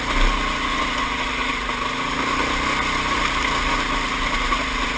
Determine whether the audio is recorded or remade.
recorded